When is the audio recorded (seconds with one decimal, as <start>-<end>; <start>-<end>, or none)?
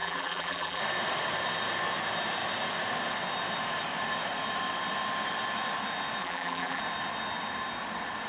0.8-6.2; 6.8-8.3